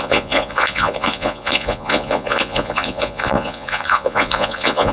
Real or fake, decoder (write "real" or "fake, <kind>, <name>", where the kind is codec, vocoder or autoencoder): fake, vocoder, Vocos